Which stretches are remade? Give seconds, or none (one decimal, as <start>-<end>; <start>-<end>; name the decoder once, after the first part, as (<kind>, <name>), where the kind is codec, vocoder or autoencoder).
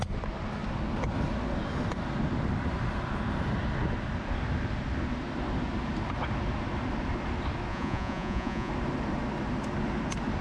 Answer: 7.7-8.7 (vocoder, Vocos)